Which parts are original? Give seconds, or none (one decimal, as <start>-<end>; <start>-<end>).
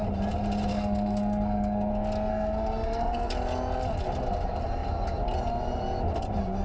0.0-0.7; 1.9-2.3; 3.3-6.6